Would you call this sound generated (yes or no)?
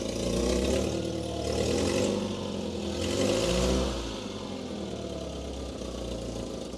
no